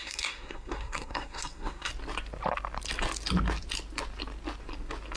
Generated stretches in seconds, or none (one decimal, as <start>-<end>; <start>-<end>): 0.0-1.9